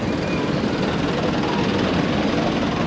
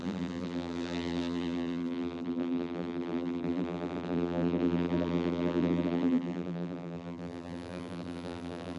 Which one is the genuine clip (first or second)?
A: first